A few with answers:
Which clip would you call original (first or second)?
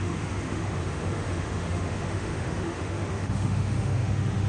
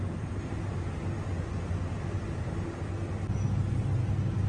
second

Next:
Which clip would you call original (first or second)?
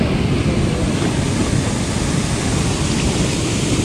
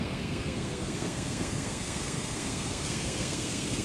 first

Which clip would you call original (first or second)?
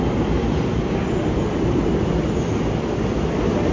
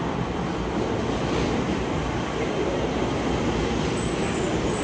second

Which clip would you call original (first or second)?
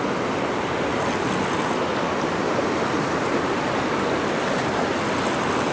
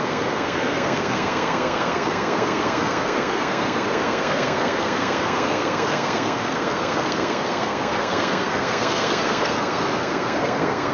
first